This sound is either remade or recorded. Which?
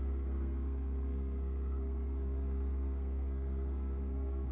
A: remade